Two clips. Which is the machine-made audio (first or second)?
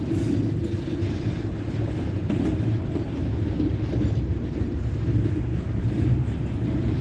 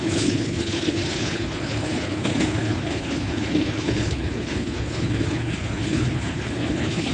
second